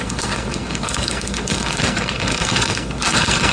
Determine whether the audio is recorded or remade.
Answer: remade